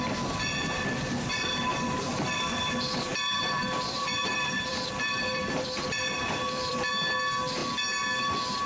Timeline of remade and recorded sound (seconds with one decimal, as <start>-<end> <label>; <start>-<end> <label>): 0.0-1.7 recorded; 1.7-2.7 remade; 2.7-3.1 recorded; 3.1-6.9 remade; 6.9-8.7 recorded